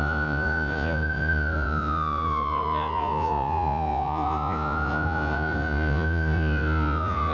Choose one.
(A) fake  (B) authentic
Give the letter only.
A